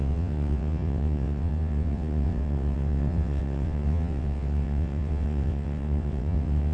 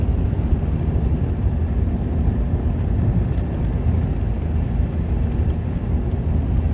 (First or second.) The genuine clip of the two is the second